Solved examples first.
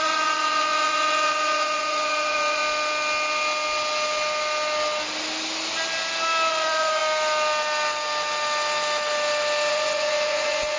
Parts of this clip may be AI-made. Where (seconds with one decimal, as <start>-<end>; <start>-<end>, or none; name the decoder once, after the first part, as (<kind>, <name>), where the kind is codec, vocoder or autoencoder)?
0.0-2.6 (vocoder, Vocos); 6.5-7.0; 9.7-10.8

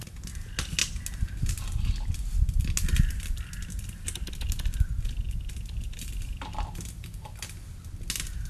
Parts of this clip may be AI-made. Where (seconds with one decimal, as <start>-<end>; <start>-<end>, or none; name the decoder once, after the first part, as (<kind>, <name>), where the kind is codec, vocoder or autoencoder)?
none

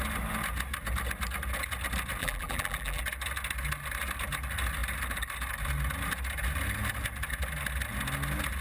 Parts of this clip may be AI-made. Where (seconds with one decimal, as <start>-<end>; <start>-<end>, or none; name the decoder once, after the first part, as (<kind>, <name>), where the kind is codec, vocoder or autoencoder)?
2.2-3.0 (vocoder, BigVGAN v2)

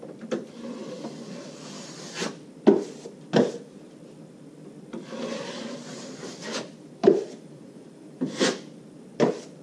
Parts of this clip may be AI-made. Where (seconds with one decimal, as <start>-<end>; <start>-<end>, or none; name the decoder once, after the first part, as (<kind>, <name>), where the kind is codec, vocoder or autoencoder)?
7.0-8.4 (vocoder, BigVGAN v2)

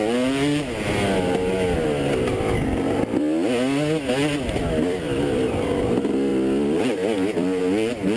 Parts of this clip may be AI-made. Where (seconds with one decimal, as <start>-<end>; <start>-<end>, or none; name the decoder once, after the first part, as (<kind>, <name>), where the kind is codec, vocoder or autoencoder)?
6.3-7.6 (vocoder, BigVGAN v2)